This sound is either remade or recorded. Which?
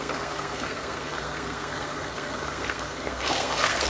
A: remade